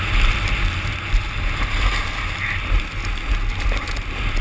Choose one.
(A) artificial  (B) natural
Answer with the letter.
B